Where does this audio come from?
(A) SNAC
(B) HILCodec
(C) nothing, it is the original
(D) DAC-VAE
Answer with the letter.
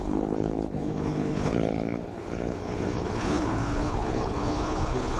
B